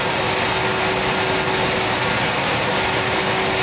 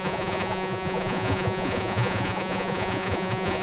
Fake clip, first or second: second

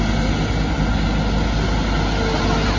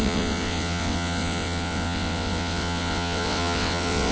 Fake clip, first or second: second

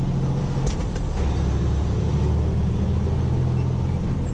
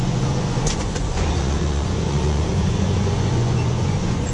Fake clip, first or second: second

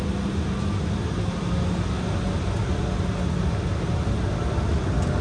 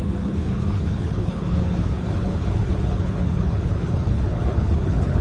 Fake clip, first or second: second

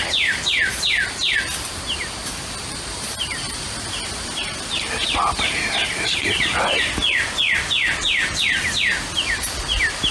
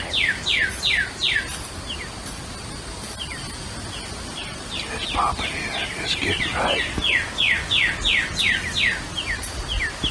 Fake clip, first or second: first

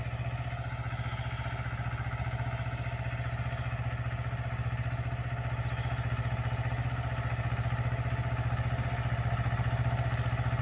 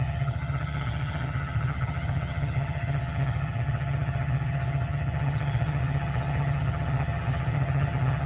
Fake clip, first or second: second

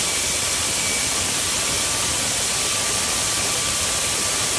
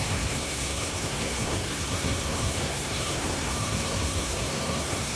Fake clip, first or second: second